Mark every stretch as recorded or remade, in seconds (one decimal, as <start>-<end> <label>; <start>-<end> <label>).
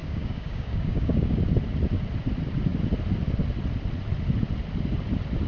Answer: 0.0-1.4 remade; 1.4-5.5 recorded